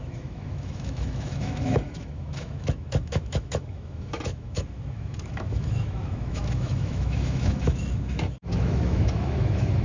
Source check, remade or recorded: remade